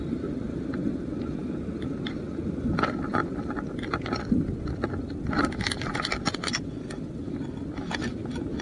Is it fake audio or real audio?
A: fake